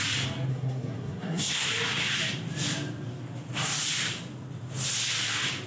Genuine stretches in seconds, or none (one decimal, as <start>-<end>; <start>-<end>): 0.0-0.5; 1.7-5.7